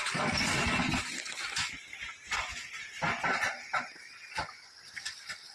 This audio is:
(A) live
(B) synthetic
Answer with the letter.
A